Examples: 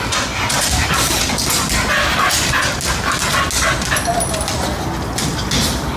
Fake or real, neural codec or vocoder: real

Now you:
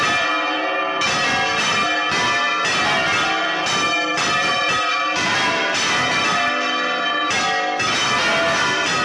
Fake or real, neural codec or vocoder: real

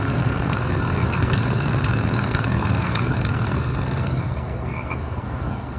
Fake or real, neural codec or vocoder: fake, codec, SNAC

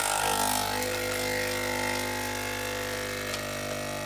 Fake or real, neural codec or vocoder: real